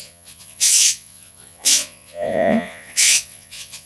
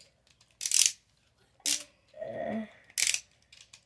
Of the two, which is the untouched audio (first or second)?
second